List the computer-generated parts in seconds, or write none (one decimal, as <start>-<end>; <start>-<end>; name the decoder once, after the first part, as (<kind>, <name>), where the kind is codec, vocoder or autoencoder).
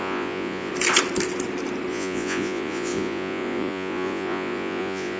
0.0-0.7 (vocoder, Vocos); 1.9-5.2